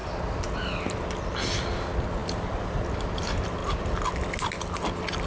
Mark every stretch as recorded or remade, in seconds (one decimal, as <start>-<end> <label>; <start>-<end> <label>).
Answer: 0.0-2.2 recorded; 2.2-2.8 remade; 2.8-5.3 recorded